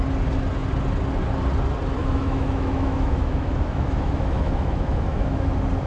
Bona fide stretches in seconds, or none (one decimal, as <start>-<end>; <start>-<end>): 0.0-2.0; 5.5-5.9